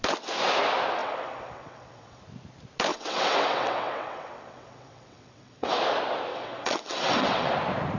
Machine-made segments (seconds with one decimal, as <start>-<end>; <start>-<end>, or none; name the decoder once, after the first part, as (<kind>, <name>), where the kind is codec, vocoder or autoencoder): 1.0-2.2 (vocoder, WaveNeXt); 2.9-5.8; 6.3-7.5